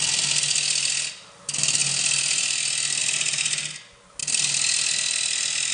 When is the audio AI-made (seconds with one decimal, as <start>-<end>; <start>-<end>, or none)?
none